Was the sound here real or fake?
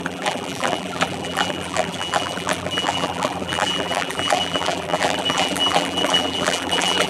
fake